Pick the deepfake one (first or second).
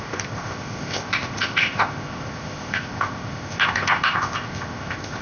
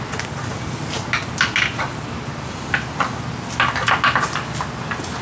first